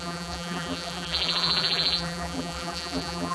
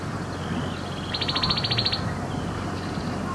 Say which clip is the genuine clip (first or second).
second